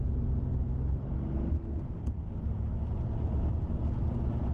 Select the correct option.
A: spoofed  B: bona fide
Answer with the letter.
B